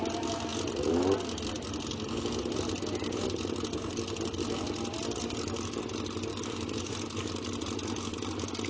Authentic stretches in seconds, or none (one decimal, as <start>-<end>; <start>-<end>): 0.0-5.2; 5.8-6.3; 6.9-8.7